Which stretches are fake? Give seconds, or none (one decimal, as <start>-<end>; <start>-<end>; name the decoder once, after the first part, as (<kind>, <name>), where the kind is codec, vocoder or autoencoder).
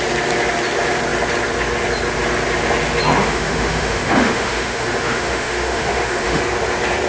3.2-6.4 (autoencoder, DAC-VAE)